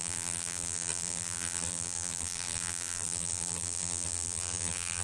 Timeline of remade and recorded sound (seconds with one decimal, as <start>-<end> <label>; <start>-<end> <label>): 0.0-5.0 remade